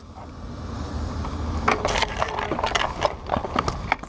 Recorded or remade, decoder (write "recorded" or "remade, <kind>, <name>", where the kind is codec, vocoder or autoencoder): recorded